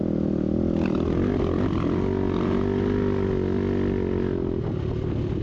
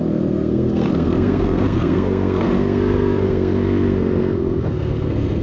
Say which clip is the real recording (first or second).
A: first